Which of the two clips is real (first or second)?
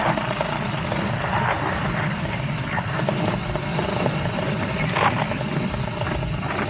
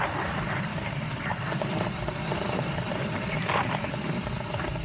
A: first